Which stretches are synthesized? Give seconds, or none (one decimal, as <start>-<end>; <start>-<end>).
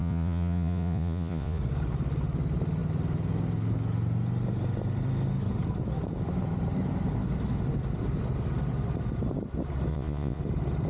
0.0-1.6; 9.9-10.4